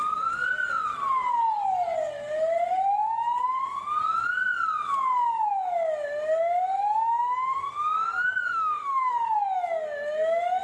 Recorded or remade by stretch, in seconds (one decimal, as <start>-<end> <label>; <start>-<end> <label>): 0.0-8.5 recorded; 8.5-9.1 remade; 9.1-10.6 recorded